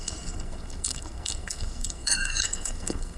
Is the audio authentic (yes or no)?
no